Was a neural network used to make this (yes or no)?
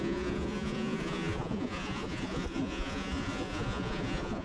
yes